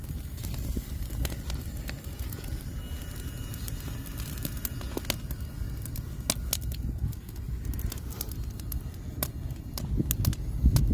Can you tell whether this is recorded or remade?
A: recorded